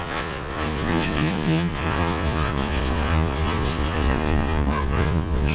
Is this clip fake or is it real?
fake